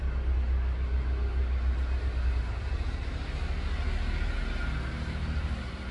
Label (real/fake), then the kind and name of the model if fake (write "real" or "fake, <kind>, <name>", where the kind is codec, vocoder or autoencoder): real